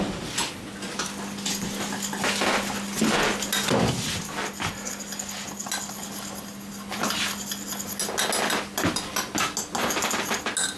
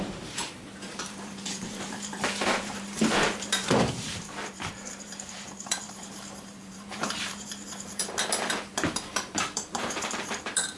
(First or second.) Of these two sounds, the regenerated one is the second